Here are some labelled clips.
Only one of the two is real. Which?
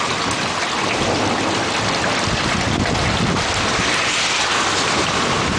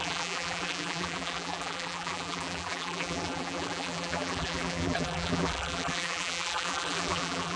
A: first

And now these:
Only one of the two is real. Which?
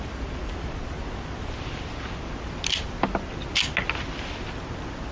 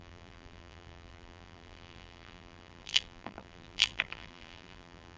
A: first